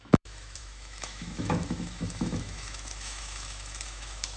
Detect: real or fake fake